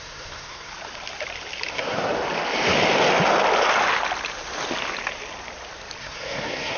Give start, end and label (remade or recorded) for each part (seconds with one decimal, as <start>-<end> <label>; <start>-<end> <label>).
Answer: 0.0-0.7 remade; 0.7-1.7 recorded; 1.7-2.1 remade; 2.1-6.0 recorded; 6.0-6.8 remade